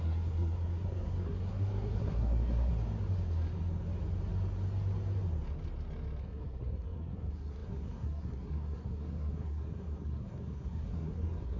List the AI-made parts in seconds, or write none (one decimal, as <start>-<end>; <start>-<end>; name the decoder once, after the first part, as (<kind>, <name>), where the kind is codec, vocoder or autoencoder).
0.0-2.7 (codec, SNAC); 6.2-11.6